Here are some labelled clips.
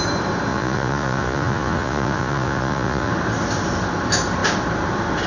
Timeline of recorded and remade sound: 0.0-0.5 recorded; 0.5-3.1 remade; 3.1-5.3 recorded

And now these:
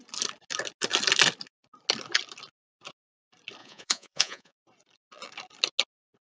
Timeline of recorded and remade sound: 0.0-3.6 recorded; 3.6-4.6 remade; 4.6-6.2 recorded

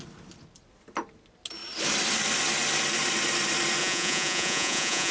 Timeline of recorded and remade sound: 0.0-3.8 recorded; 3.8-5.1 remade

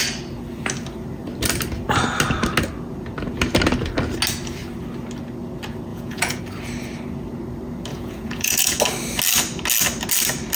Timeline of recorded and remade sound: 0.0-5.9 recorded; 5.9-6.4 remade; 6.4-7.9 recorded; 7.9-8.8 remade; 8.8-10.6 recorded

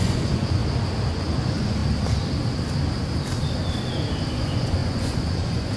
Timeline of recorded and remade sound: 0.0-0.6 remade; 0.6-1.1 recorded; 1.1-1.8 remade; 1.8-4.3 recorded; 4.3-5.8 remade

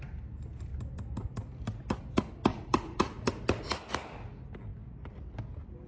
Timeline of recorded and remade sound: 0.0-2.5 recorded; 2.5-3.3 remade; 3.3-5.9 recorded

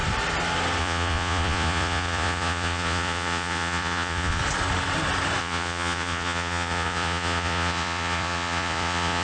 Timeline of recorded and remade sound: 0.0-0.8 recorded; 0.8-4.4 remade; 4.4-5.4 recorded; 5.4-9.2 remade

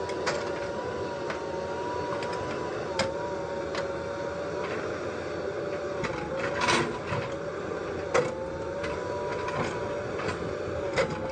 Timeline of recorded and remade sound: 0.0-11.3 recorded